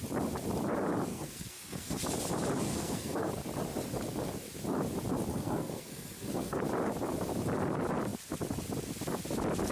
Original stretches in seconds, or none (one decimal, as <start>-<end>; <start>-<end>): 0.0-1.1; 2.0-2.7; 3.3-5.3; 6.6-9.7